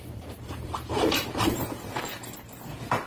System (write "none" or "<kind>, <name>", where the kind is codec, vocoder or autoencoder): vocoder, BigVGAN v2